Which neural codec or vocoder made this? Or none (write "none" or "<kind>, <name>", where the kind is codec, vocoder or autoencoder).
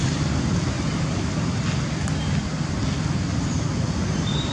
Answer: none